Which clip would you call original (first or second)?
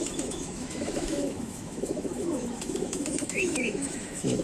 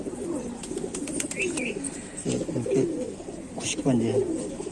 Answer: second